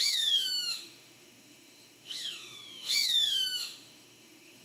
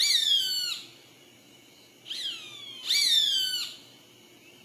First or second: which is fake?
first